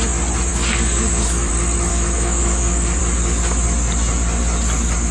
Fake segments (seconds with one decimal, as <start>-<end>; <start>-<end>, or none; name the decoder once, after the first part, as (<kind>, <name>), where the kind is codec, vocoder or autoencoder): 0.5-1.5 (codec, DAC); 1.9-3.0